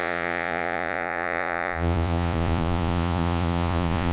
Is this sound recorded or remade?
remade